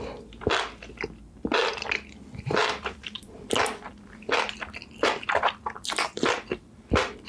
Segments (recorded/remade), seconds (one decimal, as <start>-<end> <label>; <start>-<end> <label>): 0.0-2.6 recorded; 2.6-7.3 remade